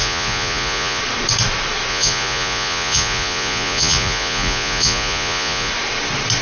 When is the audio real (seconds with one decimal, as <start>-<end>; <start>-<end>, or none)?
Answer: 1.0-1.9; 5.7-6.4